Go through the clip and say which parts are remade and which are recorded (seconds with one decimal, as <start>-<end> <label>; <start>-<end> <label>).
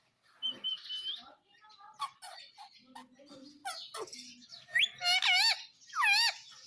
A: 0.0-6.7 recorded